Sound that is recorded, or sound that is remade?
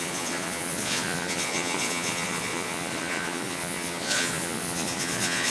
remade